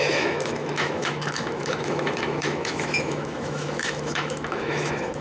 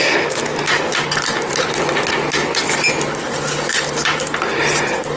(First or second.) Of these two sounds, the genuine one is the second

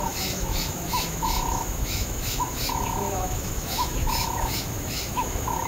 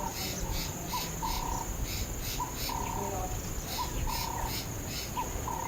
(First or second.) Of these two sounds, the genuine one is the second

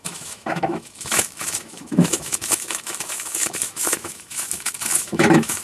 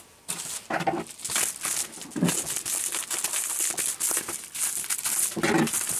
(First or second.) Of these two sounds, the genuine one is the second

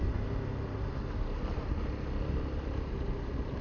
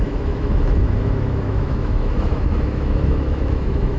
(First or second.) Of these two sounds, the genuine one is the first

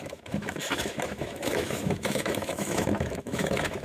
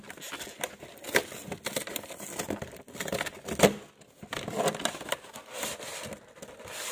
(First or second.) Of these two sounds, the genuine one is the second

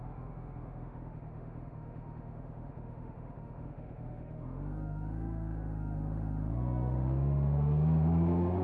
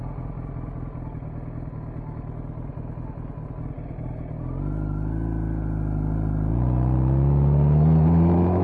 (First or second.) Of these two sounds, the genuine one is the second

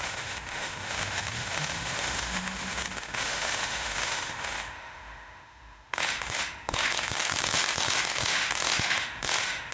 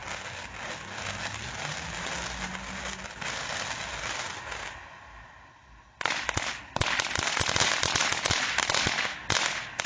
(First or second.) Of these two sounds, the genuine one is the second